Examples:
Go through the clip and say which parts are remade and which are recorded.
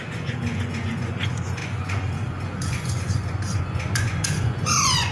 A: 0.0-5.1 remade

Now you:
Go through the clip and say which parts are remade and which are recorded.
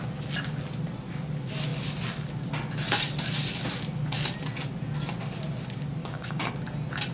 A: 0.0-6.0 recorded; 6.0-6.5 remade; 6.5-7.1 recorded